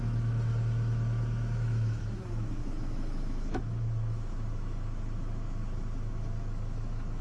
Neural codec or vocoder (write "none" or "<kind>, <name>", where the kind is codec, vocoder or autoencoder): autoencoder, DAC-VAE